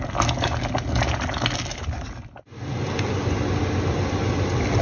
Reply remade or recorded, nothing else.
recorded